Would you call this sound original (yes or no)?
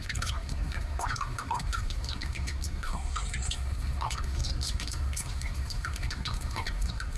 no